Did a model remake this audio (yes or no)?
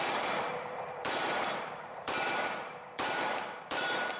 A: yes